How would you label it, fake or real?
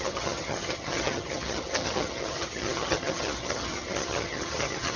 fake